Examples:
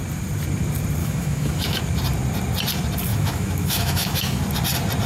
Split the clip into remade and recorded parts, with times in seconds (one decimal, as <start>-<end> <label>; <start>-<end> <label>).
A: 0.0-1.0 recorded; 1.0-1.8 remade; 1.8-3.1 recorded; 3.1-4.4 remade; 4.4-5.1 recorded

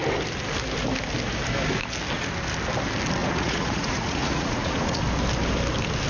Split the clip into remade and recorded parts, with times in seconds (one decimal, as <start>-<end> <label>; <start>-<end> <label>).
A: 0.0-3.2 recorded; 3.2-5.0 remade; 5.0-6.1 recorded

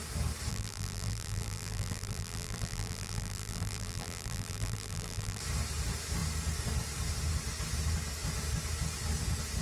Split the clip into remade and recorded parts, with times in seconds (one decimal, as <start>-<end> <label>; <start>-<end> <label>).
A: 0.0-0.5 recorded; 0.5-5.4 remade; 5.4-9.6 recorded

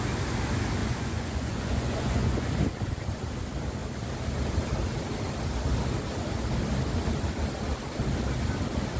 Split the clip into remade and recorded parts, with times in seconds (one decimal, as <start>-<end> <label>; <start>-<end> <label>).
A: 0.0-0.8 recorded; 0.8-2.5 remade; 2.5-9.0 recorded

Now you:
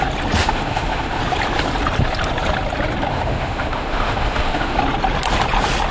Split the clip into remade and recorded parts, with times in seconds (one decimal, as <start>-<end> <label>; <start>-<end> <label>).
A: 0.0-0.4 recorded; 0.4-1.2 remade; 1.2-3.1 recorded; 3.1-4.8 remade; 4.8-5.9 recorded

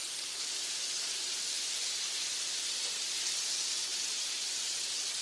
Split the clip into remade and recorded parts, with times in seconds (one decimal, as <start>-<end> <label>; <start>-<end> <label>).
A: 0.0-2.6 remade; 2.6-3.9 recorded; 3.9-4.8 remade; 4.8-5.2 recorded

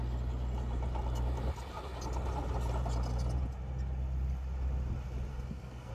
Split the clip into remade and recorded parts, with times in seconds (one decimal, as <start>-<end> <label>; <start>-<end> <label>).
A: 0.0-5.3 recorded; 5.3-5.9 remade

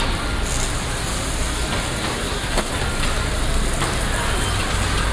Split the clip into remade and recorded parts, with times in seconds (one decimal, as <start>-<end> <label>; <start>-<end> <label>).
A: 0.0-2.1 recorded; 2.1-2.7 remade; 2.7-5.1 recorded